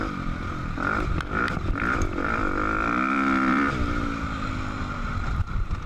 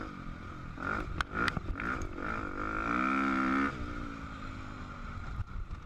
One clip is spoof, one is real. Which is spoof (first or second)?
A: first